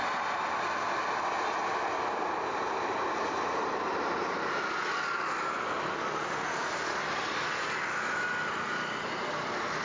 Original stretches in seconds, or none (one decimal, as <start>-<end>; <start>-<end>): 0.0-9.8